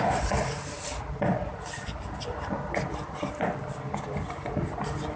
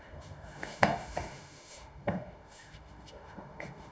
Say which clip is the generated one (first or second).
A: second